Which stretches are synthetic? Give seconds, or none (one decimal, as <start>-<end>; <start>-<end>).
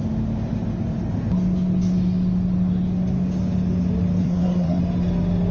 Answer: 4.2-4.8